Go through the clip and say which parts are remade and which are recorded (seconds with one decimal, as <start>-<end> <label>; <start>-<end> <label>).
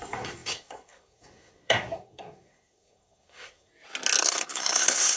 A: 0.0-3.7 remade; 3.7-4.2 recorded; 4.2-5.2 remade